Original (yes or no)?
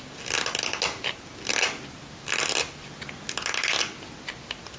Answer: yes